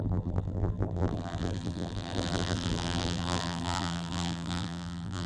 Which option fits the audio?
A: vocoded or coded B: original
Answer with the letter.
A